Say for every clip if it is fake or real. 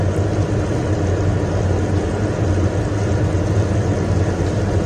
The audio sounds real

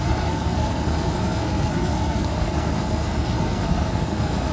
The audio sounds fake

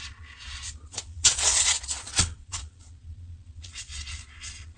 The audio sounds fake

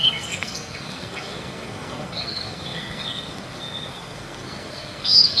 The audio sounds fake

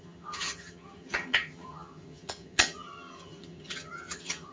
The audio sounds fake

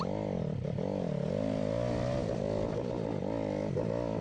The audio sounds real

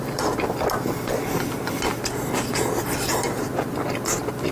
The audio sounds real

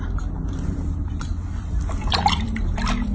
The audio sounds fake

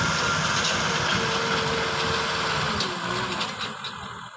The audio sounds real